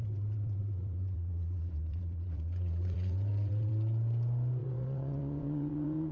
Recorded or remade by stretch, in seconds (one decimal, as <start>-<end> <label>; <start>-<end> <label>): 0.0-3.7 remade; 3.7-4.6 recorded; 4.6-6.1 remade